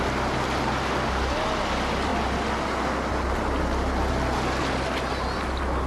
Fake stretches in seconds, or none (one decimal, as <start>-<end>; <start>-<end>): none